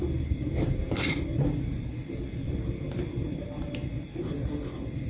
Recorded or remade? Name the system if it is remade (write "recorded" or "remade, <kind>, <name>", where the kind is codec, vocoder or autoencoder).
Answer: recorded